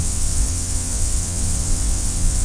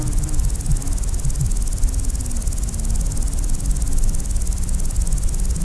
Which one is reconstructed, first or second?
first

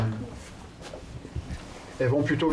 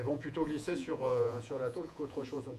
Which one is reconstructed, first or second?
second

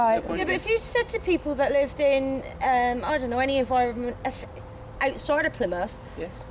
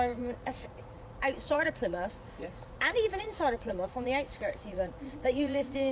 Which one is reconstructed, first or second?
second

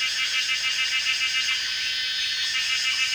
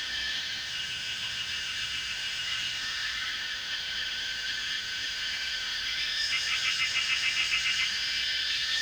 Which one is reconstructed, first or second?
second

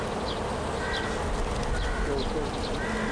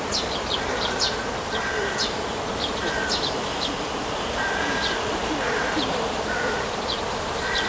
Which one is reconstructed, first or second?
second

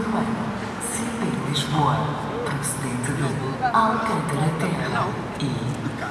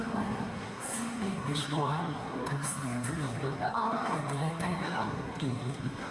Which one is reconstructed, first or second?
second